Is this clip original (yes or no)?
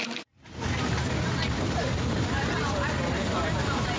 yes